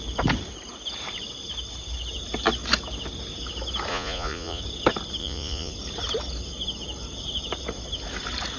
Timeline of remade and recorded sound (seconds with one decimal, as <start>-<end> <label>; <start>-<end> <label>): 0.0-3.9 recorded; 3.9-4.6 remade; 4.6-5.2 recorded; 5.2-5.7 remade; 5.7-8.6 recorded